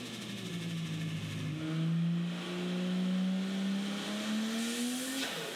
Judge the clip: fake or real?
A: real